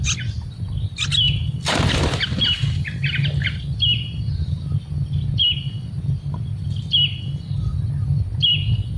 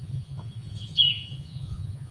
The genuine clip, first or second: first